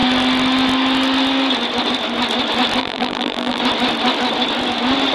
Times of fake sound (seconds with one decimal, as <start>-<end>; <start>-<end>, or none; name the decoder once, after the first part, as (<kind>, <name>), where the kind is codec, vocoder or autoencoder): 2.8-3.6 (vocoder, BigVGAN v2)